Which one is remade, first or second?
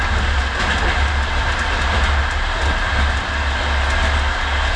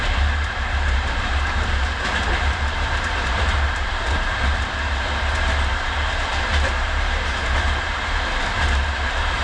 second